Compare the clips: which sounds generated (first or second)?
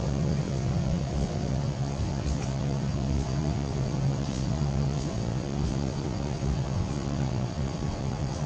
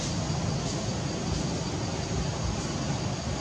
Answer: first